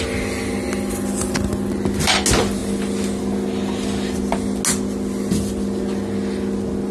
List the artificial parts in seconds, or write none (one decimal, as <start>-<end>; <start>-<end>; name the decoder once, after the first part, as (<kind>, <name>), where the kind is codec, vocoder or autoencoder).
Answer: none